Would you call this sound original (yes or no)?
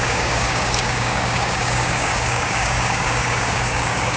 no